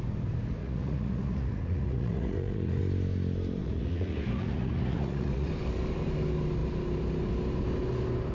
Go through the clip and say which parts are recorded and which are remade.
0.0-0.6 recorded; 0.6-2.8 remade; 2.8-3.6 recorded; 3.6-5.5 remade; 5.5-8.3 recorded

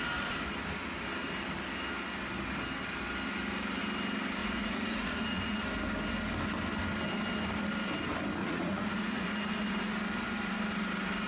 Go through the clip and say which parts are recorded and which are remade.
0.0-4.4 recorded; 4.4-5.6 remade; 5.6-8.4 recorded; 8.4-9.5 remade; 9.5-11.3 recorded

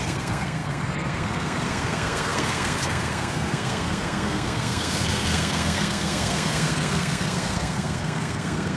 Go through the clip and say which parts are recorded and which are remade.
0.0-8.8 remade

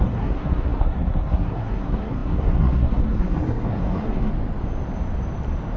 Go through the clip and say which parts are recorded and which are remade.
0.0-4.3 remade; 4.3-5.8 recorded

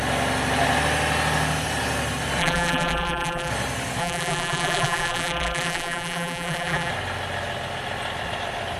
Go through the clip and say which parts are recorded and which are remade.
0.0-2.4 recorded; 2.4-3.5 remade; 3.5-4.0 recorded; 4.0-6.9 remade; 6.9-8.8 recorded

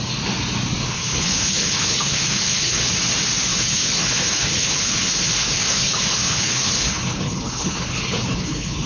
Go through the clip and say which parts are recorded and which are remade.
0.0-0.8 recorded; 0.8-2.9 remade; 2.9-3.5 recorded; 3.5-8.9 remade

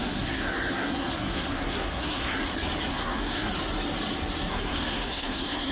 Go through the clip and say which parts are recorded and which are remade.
0.0-2.4 remade; 2.4-2.9 recorded; 2.9-3.5 remade; 3.5-4.5 recorded; 4.5-5.7 remade

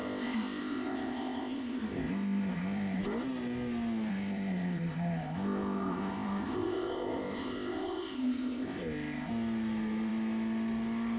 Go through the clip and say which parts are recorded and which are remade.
0.0-3.0 remade; 3.0-4.1 recorded; 4.1-9.3 remade; 9.3-11.2 recorded